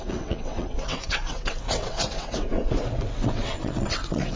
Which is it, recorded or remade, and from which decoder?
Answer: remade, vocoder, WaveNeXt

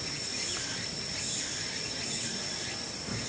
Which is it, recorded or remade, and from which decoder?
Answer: recorded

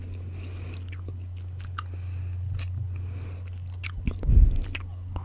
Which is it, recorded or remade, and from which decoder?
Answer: recorded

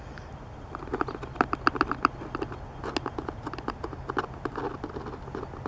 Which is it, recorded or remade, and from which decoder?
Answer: recorded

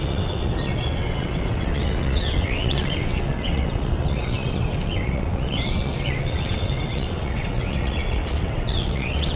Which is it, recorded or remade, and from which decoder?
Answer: remade, vocoder, WaveNeXt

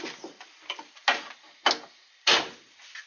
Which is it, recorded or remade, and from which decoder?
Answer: recorded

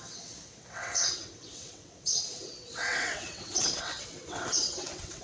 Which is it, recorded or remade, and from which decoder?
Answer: remade, vocoder, WaveNeXt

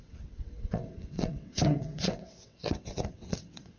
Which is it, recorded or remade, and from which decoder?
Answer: remade, vocoder, WaveNeXt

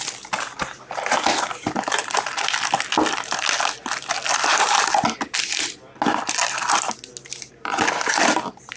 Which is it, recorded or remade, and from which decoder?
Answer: recorded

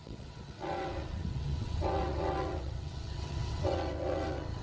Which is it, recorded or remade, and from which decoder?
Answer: remade, vocoder, WaveNeXt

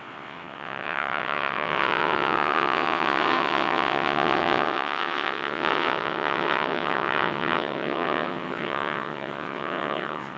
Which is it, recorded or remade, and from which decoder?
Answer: remade, vocoder, WaveNeXt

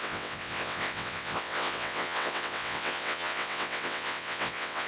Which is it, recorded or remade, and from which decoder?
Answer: remade, vocoder, WaveNeXt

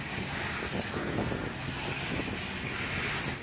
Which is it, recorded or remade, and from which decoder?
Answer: recorded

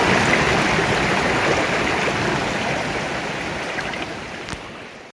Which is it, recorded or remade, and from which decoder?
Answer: recorded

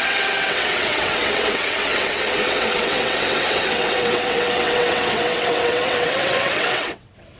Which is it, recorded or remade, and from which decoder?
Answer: remade, vocoder, WaveNeXt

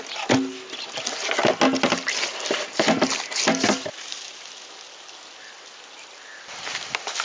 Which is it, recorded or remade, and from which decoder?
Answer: recorded